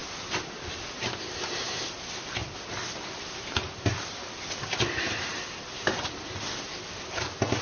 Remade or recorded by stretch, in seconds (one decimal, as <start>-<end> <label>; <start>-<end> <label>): 0.0-1.8 remade; 1.8-2.4 recorded; 2.4-6.1 remade; 6.1-7.6 recorded